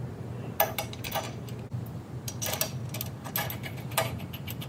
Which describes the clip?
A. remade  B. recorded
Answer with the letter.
B